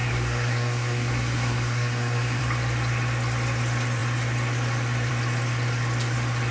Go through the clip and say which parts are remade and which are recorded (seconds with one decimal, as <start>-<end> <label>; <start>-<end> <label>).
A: 0.0-2.4 remade; 2.4-6.5 recorded